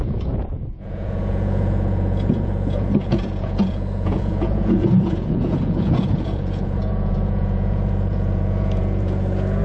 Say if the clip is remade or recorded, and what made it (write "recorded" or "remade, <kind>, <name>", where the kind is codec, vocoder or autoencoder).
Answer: remade, vocoder, Vocos